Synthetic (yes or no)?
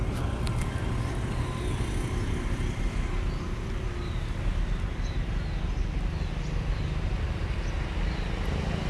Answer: no